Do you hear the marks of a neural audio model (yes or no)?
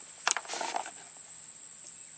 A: no